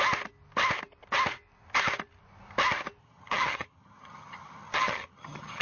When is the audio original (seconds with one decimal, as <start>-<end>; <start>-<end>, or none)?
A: 0.0-3.0